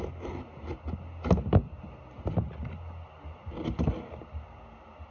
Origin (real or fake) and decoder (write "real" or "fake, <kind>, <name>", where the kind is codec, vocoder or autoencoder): real